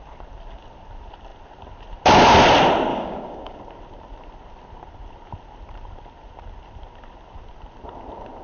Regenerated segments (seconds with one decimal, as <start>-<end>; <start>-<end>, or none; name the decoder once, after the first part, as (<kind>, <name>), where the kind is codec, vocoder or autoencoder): 2.9-3.6 (codec, DAC)